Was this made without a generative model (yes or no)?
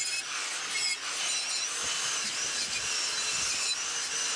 yes